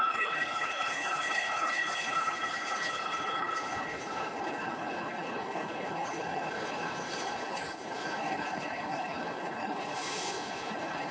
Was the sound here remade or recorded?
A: remade